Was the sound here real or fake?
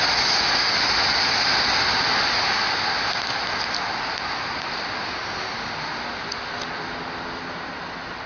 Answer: real